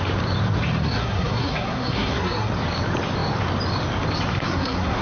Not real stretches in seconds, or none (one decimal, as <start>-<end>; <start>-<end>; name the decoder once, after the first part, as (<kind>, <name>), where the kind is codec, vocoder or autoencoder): 0.8-2.5 (codec, SNAC); 4.3-5.0